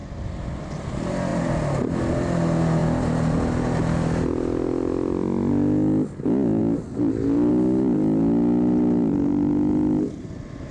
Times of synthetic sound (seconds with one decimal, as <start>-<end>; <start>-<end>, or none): none